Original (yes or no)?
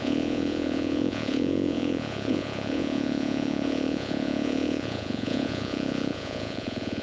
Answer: no